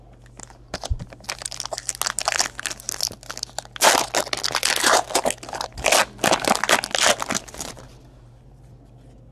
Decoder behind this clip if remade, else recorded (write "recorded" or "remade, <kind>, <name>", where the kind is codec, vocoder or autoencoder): recorded